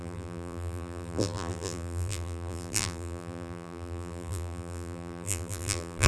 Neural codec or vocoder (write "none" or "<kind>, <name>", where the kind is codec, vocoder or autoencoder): vocoder, BigVGAN v2